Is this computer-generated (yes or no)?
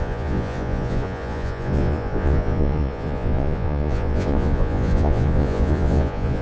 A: yes